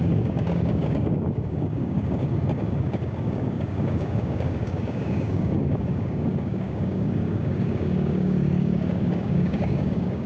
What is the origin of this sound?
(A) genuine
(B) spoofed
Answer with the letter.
B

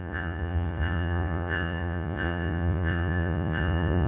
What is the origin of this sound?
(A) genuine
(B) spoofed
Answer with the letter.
B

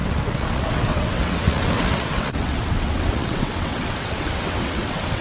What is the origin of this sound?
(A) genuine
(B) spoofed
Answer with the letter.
B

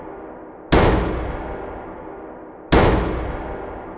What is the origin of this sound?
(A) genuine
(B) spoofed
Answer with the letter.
A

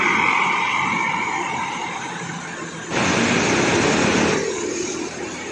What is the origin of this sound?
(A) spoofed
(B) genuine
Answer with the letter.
B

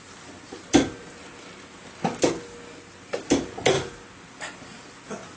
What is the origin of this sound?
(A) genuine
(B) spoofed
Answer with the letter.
A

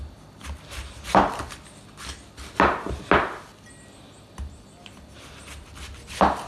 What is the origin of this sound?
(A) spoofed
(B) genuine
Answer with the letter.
B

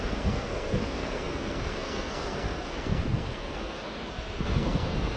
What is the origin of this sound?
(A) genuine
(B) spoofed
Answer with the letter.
B